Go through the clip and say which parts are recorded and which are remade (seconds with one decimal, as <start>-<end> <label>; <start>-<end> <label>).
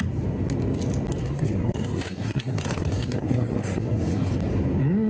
0.0-1.2 recorded; 1.2-4.3 remade; 4.3-5.1 recorded